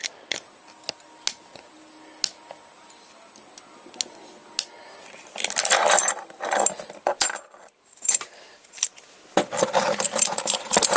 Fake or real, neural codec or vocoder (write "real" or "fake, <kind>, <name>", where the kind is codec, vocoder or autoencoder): real